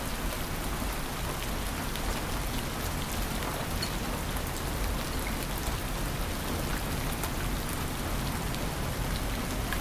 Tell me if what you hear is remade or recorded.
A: recorded